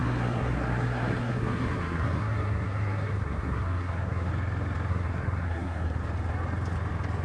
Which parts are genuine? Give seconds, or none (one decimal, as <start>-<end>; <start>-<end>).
4.3-4.9; 6.0-7.2